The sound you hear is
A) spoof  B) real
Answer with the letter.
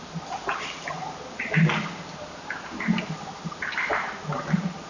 B